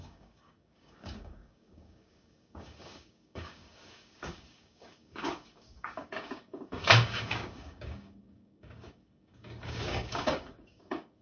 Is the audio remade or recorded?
remade